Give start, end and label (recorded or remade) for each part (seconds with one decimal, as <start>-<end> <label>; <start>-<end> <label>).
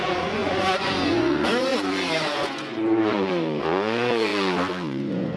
0.0-5.4 remade